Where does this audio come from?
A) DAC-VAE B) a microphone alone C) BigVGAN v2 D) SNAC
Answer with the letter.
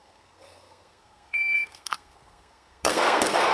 D